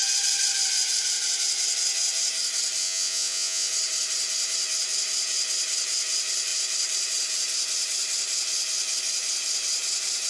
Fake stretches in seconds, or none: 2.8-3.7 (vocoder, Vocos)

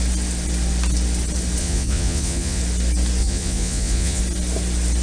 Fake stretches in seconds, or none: 1.6-2.6 (vocoder, Vocos); 3.2-4.2